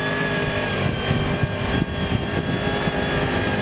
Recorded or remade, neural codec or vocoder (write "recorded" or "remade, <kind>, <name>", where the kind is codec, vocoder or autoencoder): recorded